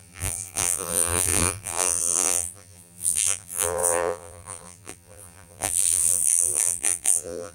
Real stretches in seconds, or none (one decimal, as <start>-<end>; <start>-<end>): none